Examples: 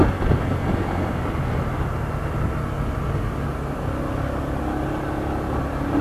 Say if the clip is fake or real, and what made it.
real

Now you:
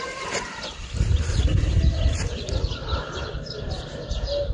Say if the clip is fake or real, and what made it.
real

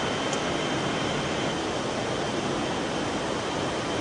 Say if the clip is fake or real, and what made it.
real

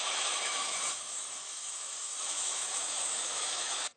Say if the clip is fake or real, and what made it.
fake, autoencoder, DAC-VAE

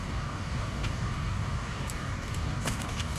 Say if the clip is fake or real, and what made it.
fake, codec, DAC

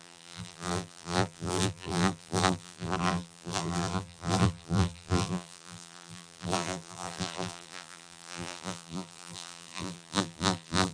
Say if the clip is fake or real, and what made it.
fake, vocoder, BigVGAN v2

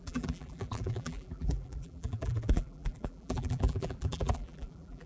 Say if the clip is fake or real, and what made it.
fake, vocoder, BigVGAN v2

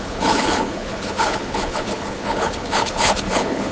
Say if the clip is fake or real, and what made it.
fake, codec, HILCodec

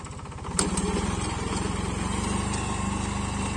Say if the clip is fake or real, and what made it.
real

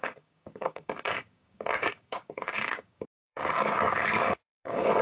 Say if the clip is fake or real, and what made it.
fake, codec, DAC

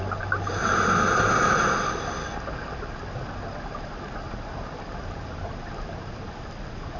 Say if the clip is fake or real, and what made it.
real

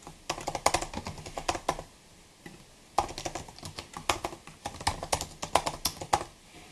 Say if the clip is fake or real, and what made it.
real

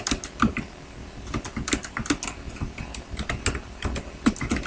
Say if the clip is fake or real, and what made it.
real